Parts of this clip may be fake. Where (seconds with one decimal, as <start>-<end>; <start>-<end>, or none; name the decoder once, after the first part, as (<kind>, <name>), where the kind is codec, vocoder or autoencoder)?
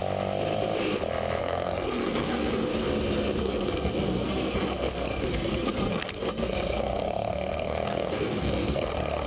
1.4-2.7 (codec, SNAC); 3.4-9.3